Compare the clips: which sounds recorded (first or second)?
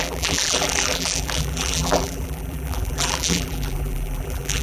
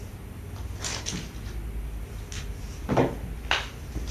second